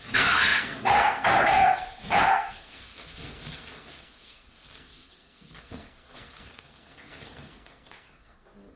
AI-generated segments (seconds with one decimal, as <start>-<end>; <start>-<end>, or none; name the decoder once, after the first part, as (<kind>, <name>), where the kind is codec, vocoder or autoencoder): 0.0-8.8 (codec, SNAC)